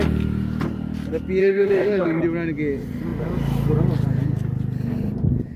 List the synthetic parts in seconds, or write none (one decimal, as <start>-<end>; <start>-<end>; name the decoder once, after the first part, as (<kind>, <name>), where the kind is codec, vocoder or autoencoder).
1.4-2.2 (codec, DAC)